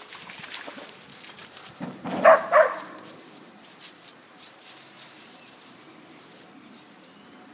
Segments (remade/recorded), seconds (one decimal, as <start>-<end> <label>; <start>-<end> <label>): 0.0-1.4 recorded; 1.4-5.9 remade; 5.9-7.5 recorded